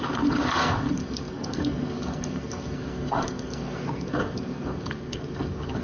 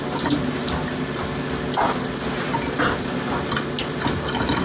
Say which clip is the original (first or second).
second